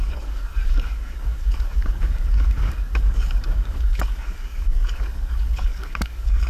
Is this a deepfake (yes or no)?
yes